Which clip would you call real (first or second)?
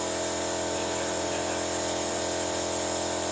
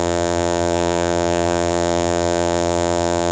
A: first